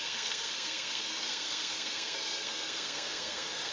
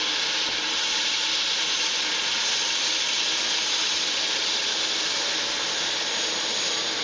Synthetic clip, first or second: first